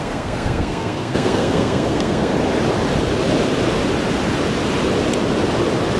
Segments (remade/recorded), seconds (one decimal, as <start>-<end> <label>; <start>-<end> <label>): 0.0-2.3 remade; 2.3-6.0 recorded